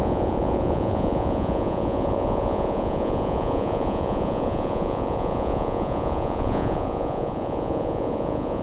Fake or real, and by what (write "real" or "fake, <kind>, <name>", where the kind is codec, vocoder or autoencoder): fake, vocoder, Vocos